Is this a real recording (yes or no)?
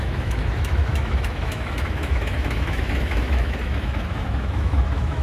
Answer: no